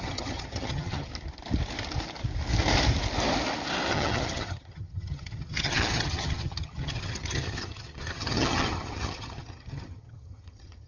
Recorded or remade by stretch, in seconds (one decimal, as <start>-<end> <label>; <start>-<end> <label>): 0.0-1.1 remade; 1.1-3.9 recorded; 3.9-10.9 remade